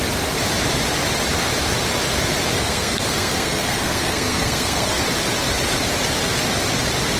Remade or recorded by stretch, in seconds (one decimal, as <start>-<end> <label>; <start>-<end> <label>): 0.0-2.6 recorded; 2.6-5.0 remade; 5.0-7.2 recorded